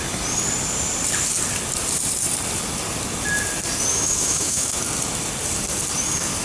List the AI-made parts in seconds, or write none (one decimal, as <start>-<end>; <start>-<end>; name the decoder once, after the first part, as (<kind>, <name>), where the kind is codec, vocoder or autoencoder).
3.9-4.8 (autoencoder, DAC-VAE)